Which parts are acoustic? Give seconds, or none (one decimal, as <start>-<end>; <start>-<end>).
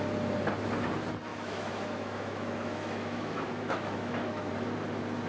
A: 0.0-1.3; 4.5-5.3